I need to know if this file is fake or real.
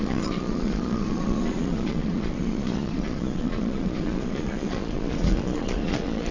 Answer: fake